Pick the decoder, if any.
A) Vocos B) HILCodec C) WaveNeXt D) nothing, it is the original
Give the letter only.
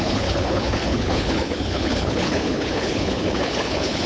B